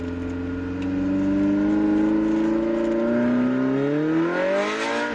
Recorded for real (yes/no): yes